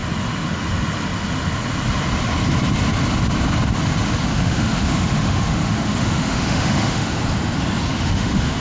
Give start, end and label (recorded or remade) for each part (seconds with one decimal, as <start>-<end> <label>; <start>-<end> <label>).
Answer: 0.0-4.3 recorded; 4.3-7.2 remade; 7.2-7.9 recorded; 7.9-8.6 remade